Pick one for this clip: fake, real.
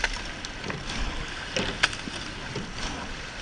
real